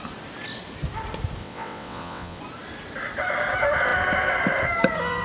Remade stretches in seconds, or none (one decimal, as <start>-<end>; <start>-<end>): 1.4-2.4